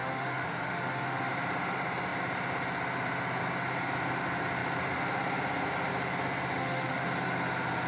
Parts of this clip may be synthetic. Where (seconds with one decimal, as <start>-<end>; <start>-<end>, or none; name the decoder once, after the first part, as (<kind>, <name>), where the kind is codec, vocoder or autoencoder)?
0.0-1.3 (autoencoder, DAC-VAE); 6.6-7.1